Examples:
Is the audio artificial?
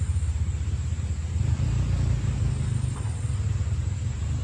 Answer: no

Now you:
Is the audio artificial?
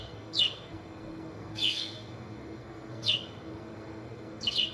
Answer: yes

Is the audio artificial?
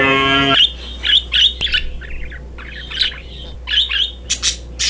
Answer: no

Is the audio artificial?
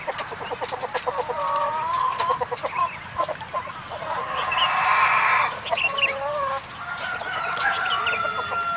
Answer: no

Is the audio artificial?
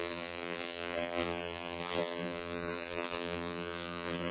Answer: yes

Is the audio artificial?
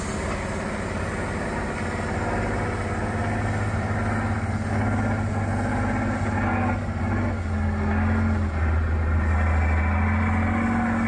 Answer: no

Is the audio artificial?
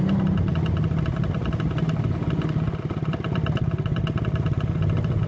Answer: no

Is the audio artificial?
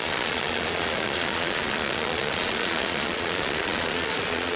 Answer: yes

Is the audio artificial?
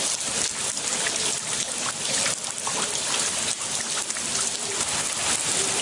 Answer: no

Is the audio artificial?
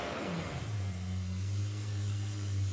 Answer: yes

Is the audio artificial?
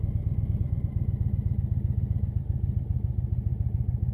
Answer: no